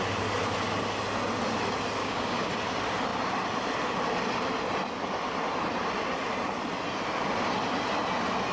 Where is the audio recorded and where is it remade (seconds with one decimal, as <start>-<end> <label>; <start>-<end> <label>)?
0.0-2.0 recorded; 2.0-2.5 remade; 2.5-8.5 recorded